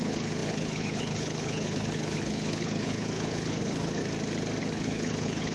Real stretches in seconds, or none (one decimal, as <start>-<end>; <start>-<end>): 4.0-4.6